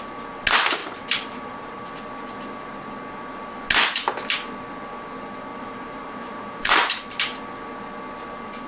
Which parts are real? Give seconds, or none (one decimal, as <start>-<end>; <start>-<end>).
0.0-0.8; 1.9-5.5; 7.2-8.7